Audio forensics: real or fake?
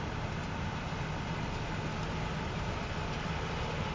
real